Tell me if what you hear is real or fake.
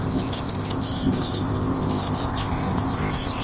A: fake